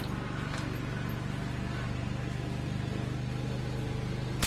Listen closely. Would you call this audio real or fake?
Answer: real